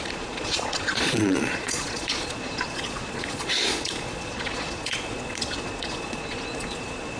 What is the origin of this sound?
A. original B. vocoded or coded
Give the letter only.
B